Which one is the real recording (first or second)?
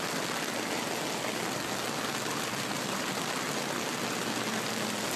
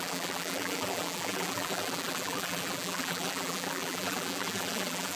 first